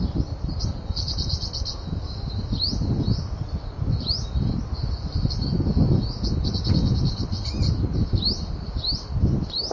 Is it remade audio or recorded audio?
recorded